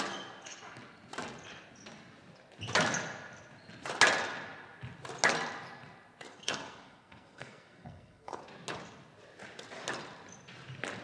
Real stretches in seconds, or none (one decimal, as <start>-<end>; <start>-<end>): 0.0-6.3; 8.4-11.0